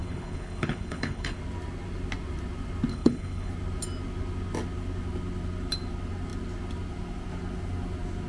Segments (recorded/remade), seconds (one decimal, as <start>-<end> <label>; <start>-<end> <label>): 0.0-1.4 remade; 1.4-2.9 recorded; 2.9-3.5 remade; 3.5-8.3 recorded